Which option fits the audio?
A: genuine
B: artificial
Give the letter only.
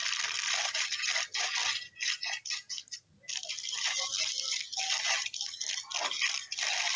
A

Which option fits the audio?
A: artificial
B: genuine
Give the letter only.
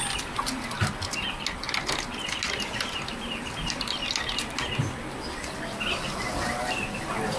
B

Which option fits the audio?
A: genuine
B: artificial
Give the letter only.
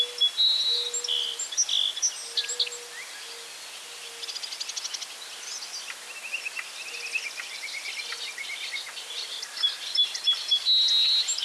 A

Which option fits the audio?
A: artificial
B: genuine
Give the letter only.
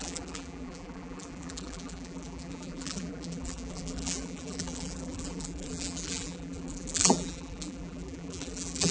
A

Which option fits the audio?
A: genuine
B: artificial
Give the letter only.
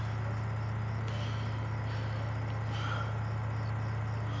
A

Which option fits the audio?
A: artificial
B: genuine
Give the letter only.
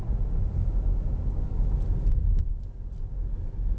B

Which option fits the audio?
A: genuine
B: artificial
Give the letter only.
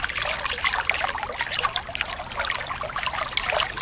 A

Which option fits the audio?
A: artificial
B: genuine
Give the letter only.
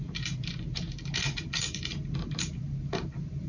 A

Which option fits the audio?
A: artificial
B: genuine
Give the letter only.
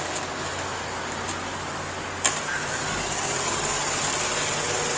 B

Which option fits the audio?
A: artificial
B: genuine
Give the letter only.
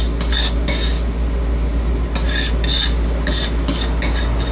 B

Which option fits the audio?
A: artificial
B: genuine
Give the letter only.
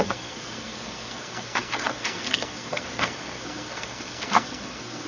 A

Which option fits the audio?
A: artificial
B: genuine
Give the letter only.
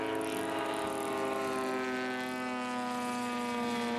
B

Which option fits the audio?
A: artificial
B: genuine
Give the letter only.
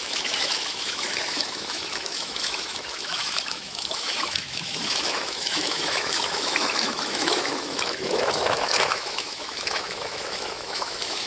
A